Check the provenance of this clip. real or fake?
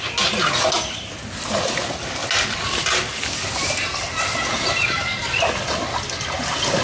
real